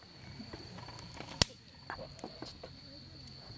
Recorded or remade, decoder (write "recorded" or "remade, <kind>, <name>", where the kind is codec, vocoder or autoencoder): recorded